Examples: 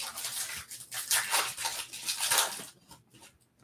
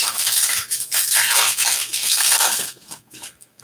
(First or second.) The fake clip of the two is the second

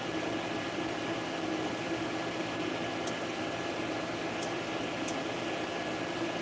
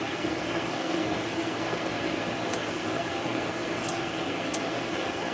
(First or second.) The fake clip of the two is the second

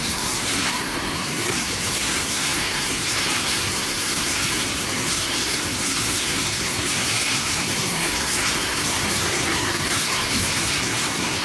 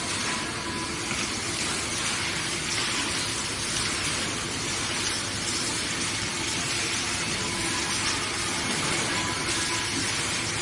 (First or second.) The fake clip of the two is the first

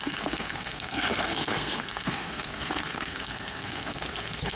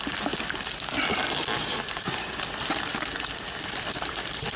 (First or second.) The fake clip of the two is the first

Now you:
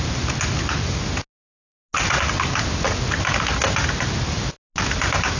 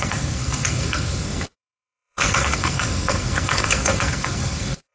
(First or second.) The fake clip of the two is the second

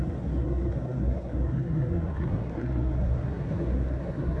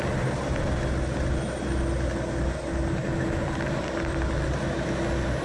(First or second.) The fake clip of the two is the first